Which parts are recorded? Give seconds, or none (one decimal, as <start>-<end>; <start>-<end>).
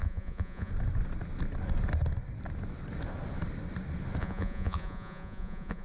0.7-4.2